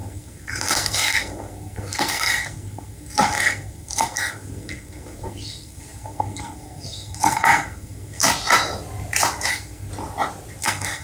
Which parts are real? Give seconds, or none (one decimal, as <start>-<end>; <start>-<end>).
8.2-9.5; 9.9-10.6